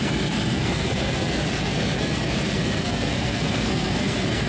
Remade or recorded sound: remade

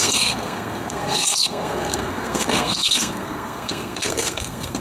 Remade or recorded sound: remade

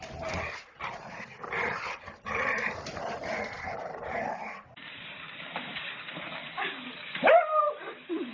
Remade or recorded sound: remade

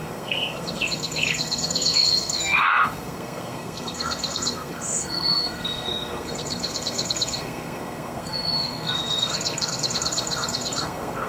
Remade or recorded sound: remade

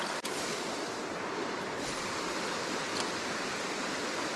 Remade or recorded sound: recorded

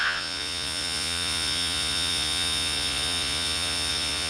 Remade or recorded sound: remade